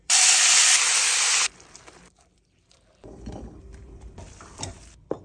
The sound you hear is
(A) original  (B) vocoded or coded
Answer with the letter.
B